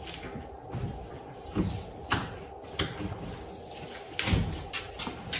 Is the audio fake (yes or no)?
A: no